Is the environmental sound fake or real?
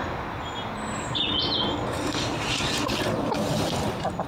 real